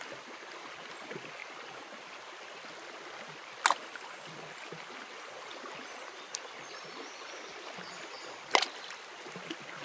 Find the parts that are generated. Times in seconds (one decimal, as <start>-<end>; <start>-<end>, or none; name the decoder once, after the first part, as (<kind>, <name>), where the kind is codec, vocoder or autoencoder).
none